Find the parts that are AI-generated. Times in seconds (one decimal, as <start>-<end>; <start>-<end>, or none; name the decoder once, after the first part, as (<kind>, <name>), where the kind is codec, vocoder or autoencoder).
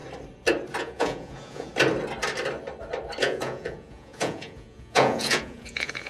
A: 0.8-1.7 (vocoder, Vocos); 3.2-6.1